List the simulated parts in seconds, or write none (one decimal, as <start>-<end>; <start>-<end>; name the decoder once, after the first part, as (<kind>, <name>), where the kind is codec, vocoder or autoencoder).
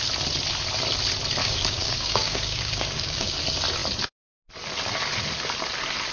1.4-3.4 (codec, DAC)